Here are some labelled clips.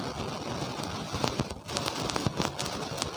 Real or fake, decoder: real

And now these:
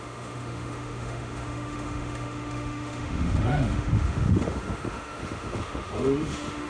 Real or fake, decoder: fake, autoencoder, DAC-VAE